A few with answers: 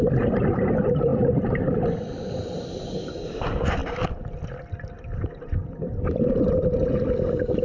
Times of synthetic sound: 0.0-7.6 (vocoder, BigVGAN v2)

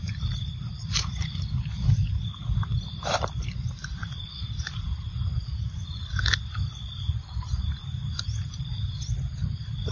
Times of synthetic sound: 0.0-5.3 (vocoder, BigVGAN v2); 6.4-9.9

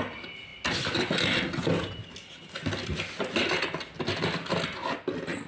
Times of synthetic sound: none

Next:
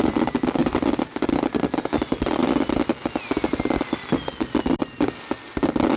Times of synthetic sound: 0.6-1.3 (vocoder, BigVGAN v2)

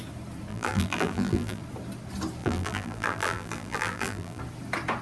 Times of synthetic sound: 0.5-1.6 (vocoder, BigVGAN v2); 2.4-4.4